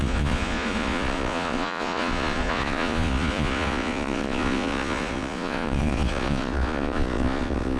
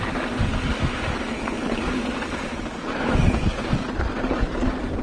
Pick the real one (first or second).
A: second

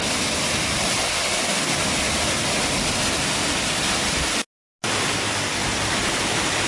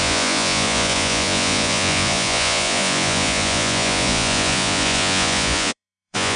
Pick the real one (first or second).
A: first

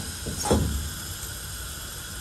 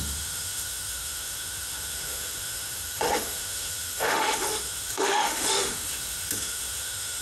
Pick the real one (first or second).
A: first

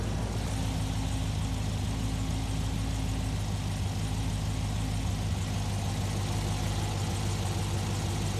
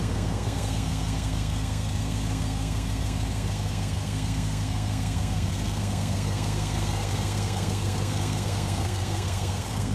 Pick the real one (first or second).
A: first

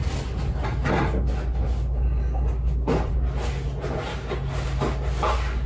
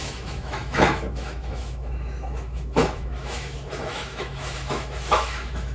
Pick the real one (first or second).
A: first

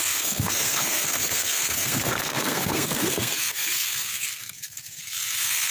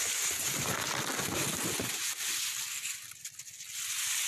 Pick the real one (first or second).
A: second